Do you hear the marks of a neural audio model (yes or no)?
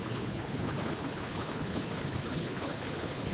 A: yes